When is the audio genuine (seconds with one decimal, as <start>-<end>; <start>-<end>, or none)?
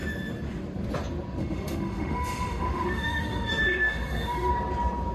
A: 0.0-1.4; 4.5-5.1